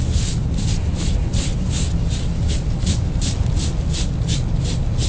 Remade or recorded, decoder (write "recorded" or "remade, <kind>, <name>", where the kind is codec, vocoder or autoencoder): recorded